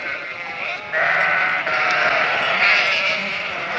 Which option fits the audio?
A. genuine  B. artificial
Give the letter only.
B